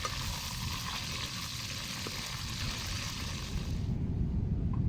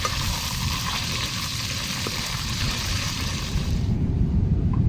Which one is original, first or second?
first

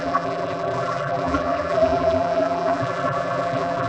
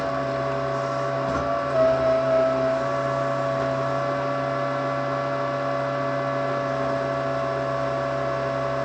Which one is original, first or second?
second